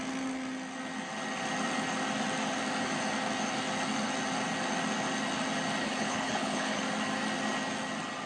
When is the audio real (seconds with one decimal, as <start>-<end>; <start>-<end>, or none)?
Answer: 0.0-5.8; 6.8-8.3